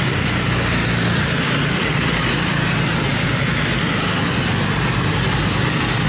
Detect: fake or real real